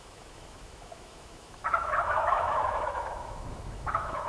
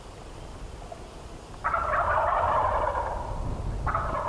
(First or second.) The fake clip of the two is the first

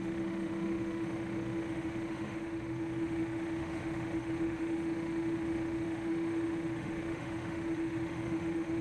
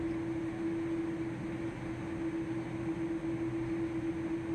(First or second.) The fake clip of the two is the first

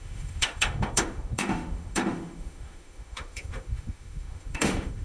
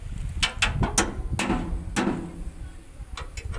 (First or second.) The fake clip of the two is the first